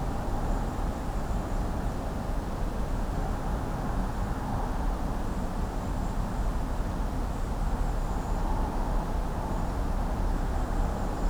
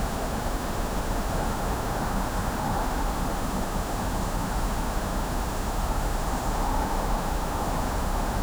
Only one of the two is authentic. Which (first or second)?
first